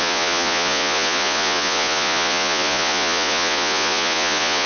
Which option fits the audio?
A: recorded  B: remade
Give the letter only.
B